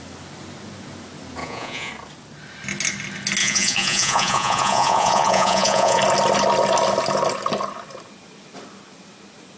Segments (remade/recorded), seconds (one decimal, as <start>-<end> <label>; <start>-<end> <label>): 0.0-1.4 recorded; 1.4-1.9 remade; 1.9-3.4 recorded; 3.4-6.0 remade; 6.0-9.6 recorded